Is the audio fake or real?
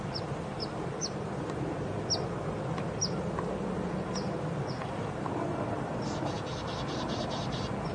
real